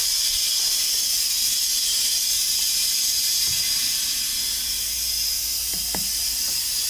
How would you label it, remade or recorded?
recorded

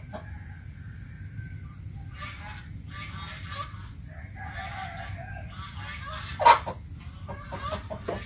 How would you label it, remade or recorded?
recorded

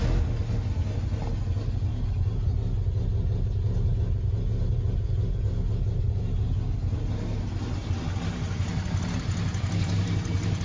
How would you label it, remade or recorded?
recorded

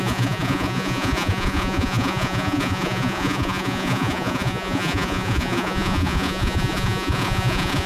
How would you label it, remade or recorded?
remade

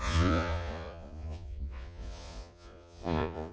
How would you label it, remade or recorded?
remade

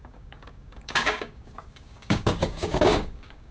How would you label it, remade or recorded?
remade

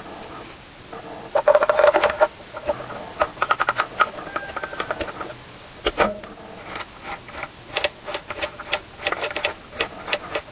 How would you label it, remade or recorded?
recorded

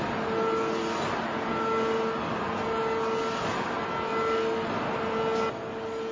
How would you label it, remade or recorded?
recorded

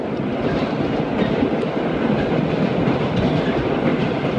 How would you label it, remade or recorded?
recorded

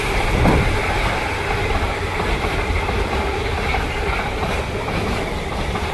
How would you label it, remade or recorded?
remade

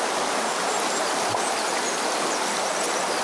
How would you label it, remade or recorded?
recorded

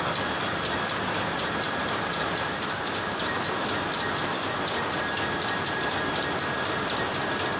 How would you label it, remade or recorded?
recorded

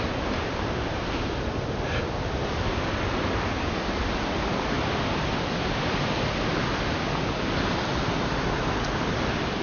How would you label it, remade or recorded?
recorded